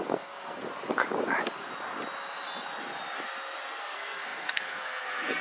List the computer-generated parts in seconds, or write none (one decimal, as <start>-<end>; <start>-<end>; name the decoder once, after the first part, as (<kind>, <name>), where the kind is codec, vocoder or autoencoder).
0.0-0.6 (codec, SNAC); 3.8-5.4